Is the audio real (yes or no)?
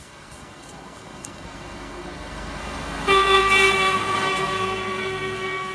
no